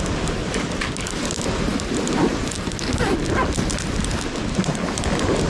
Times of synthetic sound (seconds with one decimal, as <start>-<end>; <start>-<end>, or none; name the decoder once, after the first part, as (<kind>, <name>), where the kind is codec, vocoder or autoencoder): none